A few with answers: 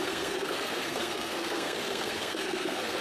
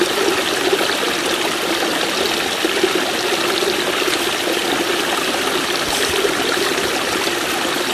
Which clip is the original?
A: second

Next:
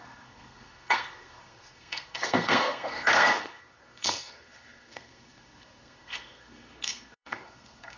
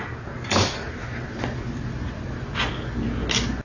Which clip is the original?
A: second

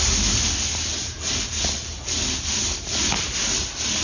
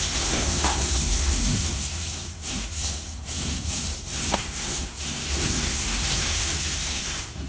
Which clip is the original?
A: first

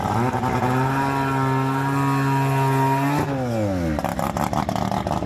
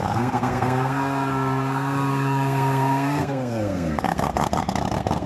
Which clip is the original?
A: first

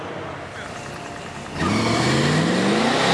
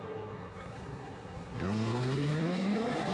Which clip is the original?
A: first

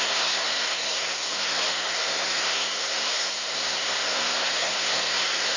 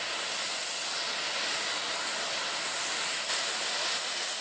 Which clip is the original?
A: second